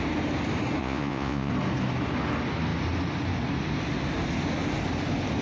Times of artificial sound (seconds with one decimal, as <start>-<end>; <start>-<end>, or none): 0.8-1.5